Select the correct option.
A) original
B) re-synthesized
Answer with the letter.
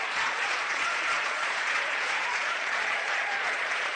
B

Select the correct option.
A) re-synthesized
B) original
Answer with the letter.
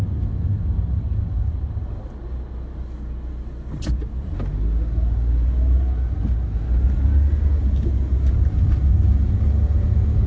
B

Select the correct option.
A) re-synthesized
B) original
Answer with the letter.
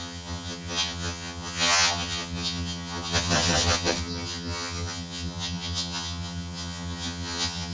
A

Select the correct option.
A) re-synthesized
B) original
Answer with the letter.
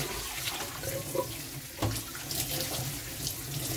B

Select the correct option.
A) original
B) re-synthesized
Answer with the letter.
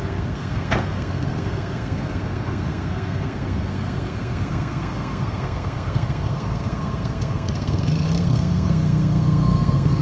B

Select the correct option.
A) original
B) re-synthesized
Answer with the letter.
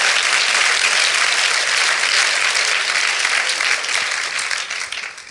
A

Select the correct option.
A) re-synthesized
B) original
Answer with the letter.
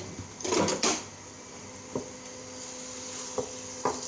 A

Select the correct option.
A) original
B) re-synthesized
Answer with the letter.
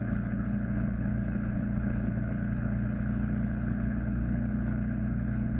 B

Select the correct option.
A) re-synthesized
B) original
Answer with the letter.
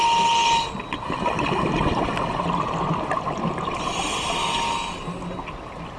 B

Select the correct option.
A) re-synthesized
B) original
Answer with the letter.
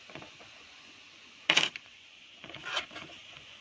A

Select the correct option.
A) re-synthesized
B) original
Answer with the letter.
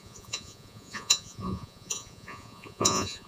A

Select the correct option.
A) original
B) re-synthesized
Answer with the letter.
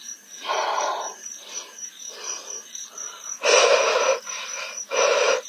B